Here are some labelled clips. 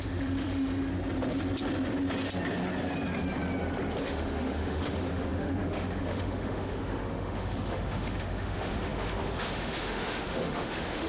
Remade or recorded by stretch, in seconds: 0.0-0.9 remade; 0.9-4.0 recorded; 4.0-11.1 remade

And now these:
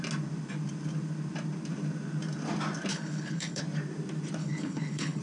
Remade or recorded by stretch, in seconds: 0.0-2.9 recorded; 2.9-3.6 remade; 3.6-4.4 recorded; 4.4-5.2 remade

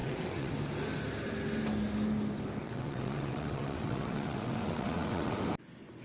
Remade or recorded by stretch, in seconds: 0.0-0.5 remade; 0.5-2.6 recorded; 2.6-5.4 remade; 5.4-6.0 recorded

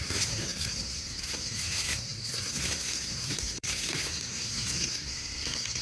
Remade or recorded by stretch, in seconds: 0.0-5.8 remade

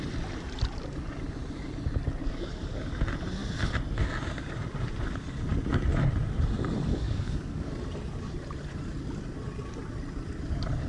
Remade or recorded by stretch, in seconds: 0.0-2.2 recorded; 2.2-2.9 remade; 2.9-6.9 recorded; 6.9-7.7 remade; 7.7-10.9 recorded